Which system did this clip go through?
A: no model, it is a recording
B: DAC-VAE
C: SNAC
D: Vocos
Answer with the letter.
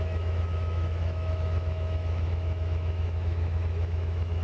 B